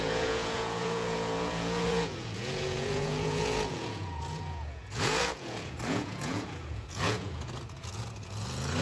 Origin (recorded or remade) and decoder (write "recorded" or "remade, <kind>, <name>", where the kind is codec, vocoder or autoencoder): remade, vocoder, Vocos